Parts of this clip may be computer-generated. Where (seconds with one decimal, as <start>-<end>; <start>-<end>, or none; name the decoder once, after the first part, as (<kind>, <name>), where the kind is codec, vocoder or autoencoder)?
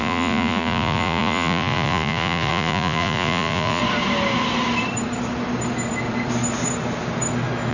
0.0-3.8 (vocoder, Vocos)